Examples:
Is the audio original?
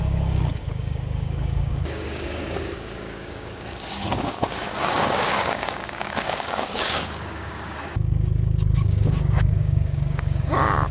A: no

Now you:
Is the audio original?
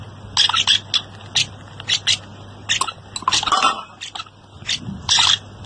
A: yes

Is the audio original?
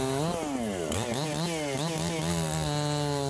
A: yes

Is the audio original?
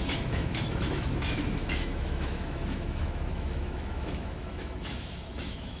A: no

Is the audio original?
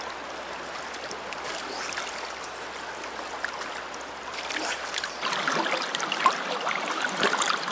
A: yes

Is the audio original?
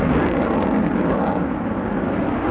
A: yes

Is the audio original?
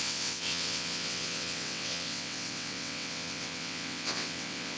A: no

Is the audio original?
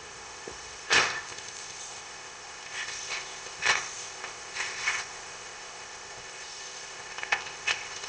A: no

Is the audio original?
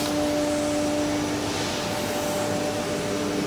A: yes